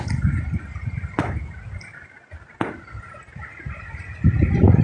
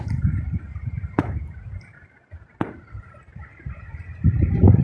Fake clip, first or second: second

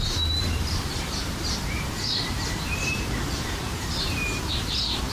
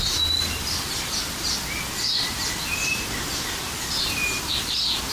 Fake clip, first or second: first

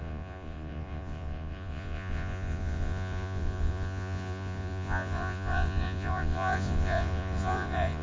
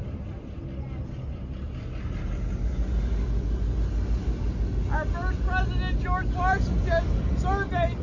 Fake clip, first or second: first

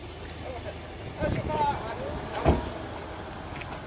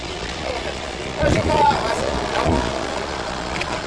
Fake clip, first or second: second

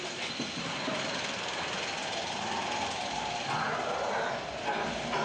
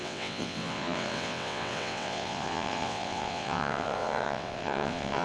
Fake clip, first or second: second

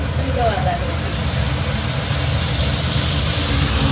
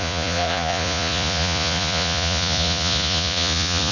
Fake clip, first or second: second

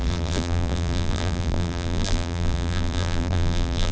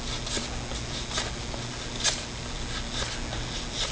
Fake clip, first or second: first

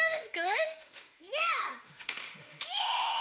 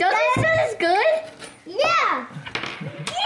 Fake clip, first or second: first